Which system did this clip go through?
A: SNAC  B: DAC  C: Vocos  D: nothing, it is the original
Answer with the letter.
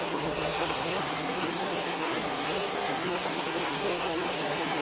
A